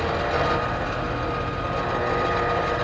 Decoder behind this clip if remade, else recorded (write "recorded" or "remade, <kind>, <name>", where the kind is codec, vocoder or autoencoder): recorded